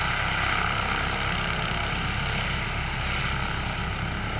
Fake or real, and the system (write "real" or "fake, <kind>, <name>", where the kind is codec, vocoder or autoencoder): real